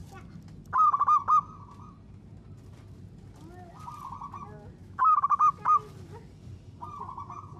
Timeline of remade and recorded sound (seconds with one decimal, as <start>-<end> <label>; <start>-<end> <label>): 0.0-4.8 recorded; 4.8-5.5 remade; 5.5-7.6 recorded